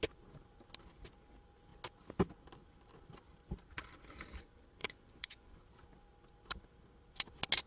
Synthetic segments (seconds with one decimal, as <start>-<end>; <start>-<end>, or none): 4.8-5.6